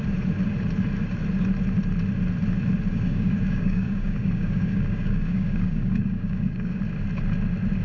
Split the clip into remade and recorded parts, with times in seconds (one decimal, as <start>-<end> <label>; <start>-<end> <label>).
0.0-2.9 recorded; 2.9-6.8 remade; 6.8-7.8 recorded

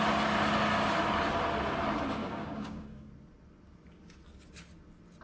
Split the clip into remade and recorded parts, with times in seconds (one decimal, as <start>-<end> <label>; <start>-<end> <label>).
0.0-2.2 recorded; 2.2-3.1 remade; 3.1-5.2 recorded

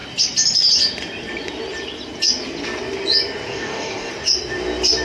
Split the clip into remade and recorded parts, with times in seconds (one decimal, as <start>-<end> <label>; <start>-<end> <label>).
0.0-3.5 recorded; 3.5-4.1 remade; 4.1-5.0 recorded

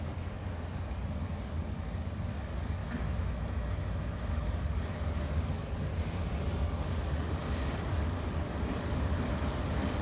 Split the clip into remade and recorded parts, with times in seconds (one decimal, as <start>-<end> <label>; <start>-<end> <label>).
0.0-2.8 remade; 2.8-4.3 recorded; 4.3-5.9 remade; 5.9-6.4 recorded; 6.4-8.5 remade; 8.5-9.6 recorded; 9.6-10.0 remade